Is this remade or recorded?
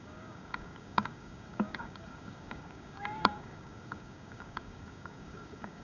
remade